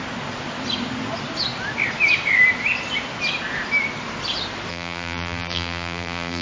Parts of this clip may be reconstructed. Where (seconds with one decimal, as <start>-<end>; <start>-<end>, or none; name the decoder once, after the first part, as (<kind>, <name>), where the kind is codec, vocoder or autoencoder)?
4.7-6.4 (vocoder, BigVGAN v2)